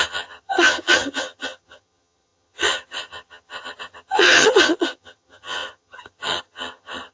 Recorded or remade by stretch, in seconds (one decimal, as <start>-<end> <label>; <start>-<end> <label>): 0.0-7.1 remade